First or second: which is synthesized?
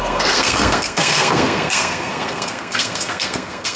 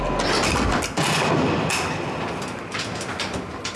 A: first